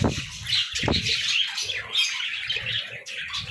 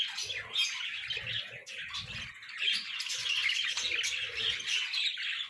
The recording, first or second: second